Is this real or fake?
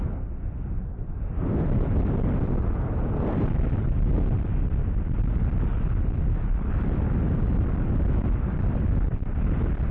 real